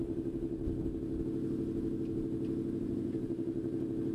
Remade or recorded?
recorded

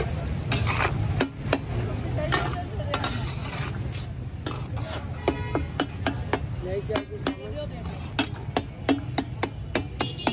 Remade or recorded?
recorded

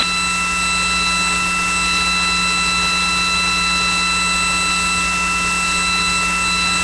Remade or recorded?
recorded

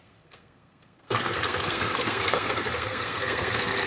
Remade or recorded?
remade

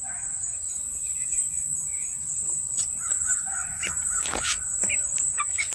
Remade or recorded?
recorded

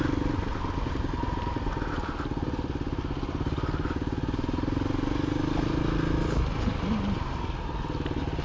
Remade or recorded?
recorded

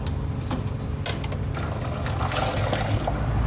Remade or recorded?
recorded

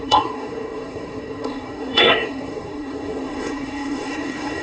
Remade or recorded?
remade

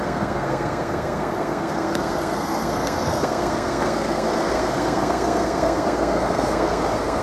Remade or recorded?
remade